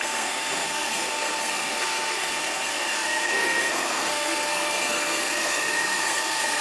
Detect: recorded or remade remade